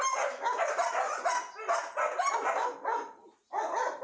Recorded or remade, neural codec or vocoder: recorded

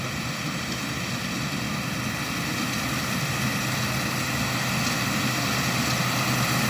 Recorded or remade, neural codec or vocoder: recorded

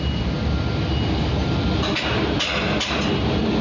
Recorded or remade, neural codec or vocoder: recorded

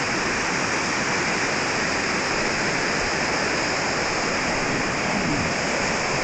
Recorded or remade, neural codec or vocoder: recorded